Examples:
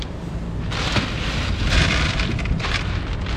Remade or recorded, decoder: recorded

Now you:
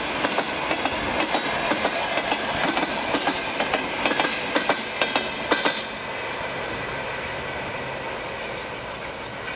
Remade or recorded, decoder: recorded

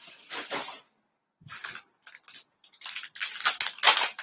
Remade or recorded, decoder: recorded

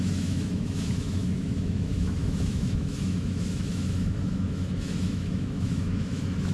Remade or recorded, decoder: remade, autoencoder, DAC-VAE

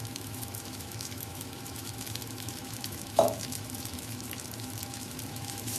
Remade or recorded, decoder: remade, autoencoder, DAC-VAE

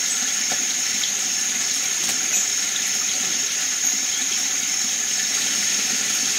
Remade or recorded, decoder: recorded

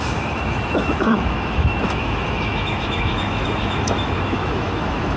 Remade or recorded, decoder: remade, autoencoder, DAC-VAE